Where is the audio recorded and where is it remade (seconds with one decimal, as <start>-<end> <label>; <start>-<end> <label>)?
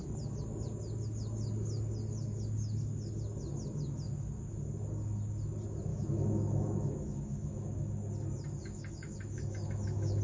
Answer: 0.0-5.9 recorded; 5.9-7.9 remade; 7.9-8.6 recorded; 8.6-10.2 remade